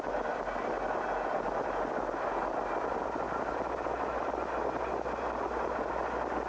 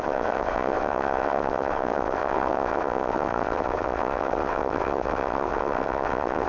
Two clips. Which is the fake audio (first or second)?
second